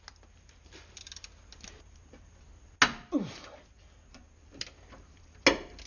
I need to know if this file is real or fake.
real